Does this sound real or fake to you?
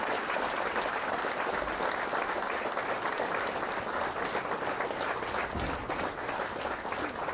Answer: real